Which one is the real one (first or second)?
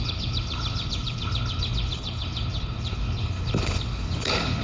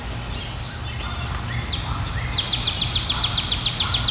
second